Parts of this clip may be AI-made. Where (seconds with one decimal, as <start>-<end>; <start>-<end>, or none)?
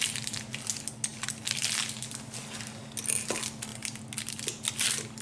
none